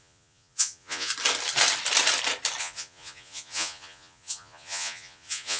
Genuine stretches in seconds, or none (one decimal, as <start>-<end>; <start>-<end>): 1.1-2.6